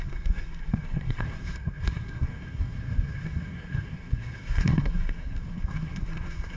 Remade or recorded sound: remade